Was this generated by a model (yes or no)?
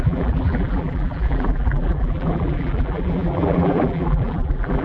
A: yes